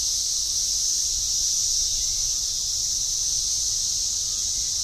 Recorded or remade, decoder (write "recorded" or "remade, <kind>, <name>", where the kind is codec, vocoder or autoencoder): recorded